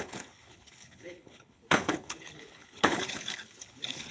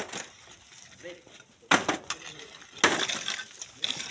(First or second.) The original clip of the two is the second